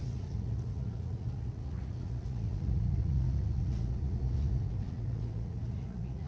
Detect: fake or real fake